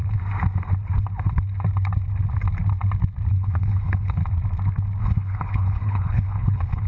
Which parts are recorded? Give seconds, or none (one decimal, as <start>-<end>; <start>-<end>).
0.0-3.3; 4.2-5.0